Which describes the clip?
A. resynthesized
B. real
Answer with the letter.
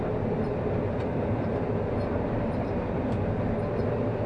B